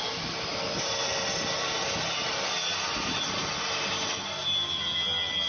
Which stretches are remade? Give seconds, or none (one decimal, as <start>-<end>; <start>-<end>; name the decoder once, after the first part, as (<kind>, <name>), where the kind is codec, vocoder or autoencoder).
none